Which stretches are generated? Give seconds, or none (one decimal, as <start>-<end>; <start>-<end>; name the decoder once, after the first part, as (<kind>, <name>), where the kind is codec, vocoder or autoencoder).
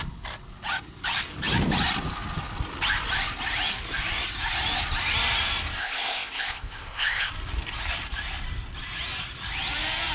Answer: 5.8-7.3 (codec, ZipCodec)